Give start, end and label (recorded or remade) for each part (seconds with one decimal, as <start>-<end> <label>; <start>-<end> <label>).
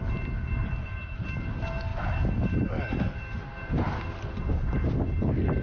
0.0-5.6 recorded